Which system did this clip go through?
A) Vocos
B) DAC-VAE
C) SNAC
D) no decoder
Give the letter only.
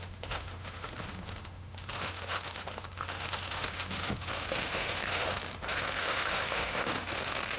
B